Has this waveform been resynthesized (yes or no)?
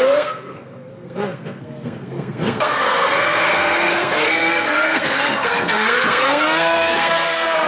yes